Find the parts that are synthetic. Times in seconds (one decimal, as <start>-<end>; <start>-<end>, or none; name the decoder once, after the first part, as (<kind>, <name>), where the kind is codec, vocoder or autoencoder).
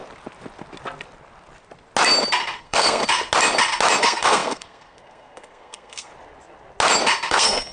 2.6-3.0 (codec, SNAC); 4.0-6.1; 7.3-7.7